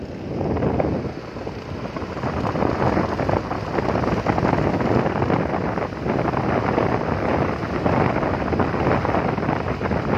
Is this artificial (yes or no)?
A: no